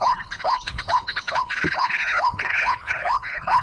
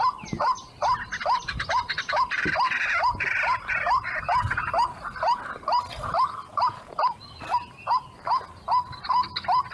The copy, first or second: first